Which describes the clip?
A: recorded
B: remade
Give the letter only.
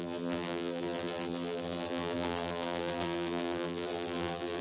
B